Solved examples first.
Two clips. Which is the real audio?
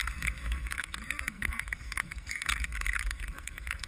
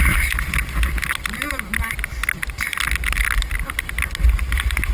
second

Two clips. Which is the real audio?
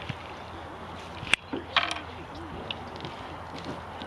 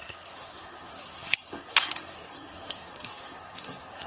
first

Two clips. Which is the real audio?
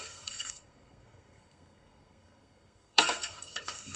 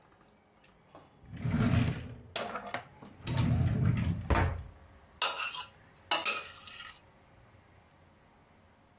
second